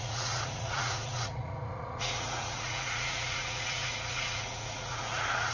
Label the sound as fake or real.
fake